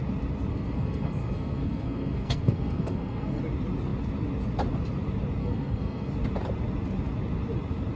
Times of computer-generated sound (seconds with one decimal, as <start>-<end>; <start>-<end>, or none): 0.5-3.4; 5.4-6.1